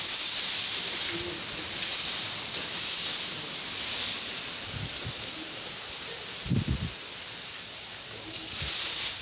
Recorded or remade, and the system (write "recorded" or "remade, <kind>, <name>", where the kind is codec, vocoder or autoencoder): recorded